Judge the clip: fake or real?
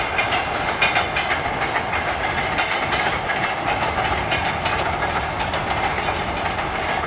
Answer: real